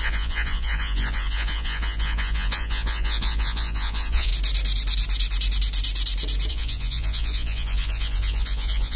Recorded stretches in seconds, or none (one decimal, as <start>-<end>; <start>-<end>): 4.3-6.5